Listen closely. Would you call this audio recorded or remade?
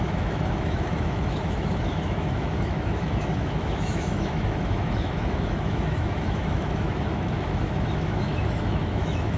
remade